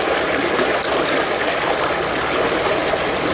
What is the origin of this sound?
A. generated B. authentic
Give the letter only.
B